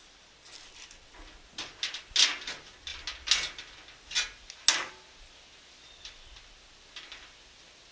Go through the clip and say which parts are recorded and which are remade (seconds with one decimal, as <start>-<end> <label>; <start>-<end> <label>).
0.0-7.9 recorded